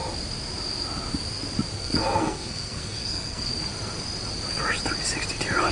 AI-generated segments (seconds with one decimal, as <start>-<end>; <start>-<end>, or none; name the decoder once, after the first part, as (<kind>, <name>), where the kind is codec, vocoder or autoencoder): 1.8-3.5 (codec, SNAC)